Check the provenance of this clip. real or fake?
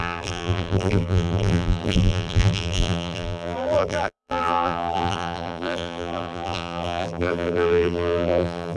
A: fake